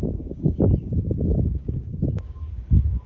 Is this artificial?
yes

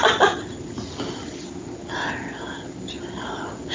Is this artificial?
no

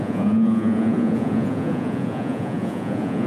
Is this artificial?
yes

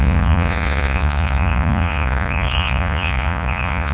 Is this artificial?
yes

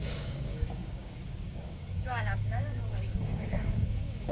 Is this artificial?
yes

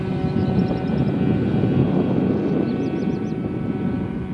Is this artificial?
no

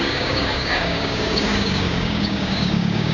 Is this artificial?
yes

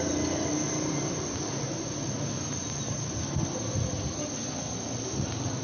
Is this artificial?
no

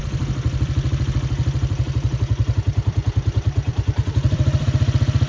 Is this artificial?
yes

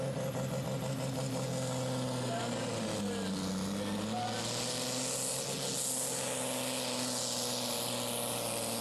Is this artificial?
no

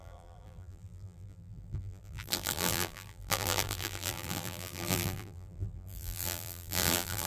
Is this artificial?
yes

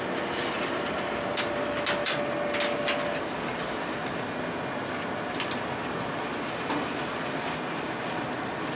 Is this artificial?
no